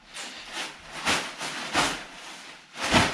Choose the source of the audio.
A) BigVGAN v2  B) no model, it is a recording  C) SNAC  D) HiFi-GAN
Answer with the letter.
B